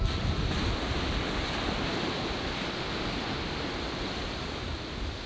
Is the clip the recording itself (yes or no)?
yes